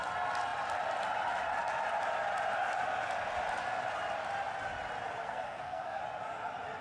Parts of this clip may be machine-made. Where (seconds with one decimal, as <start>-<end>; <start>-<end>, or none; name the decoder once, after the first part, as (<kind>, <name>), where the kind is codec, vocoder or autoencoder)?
5.2-6.0 (codec, SNAC)

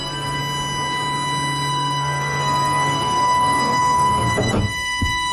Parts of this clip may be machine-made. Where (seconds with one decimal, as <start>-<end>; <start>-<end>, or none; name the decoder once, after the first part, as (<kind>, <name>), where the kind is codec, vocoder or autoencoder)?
0.0-0.4 (codec, SNAC); 1.7-5.3

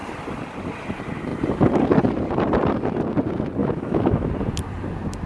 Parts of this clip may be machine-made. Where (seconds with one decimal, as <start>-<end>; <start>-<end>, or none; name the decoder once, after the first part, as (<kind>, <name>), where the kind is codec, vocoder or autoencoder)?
3.6-4.3 (autoencoder, DAC-VAE)

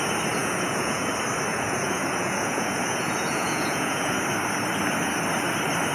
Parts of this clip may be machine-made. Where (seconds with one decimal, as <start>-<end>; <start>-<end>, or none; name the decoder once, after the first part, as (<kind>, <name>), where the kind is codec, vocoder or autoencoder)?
0.4-1.1 (vocoder, Vocos); 1.5-4.1

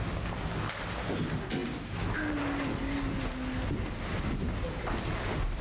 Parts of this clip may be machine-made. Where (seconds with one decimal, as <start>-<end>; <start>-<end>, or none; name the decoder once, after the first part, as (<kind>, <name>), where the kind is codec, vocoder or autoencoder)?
none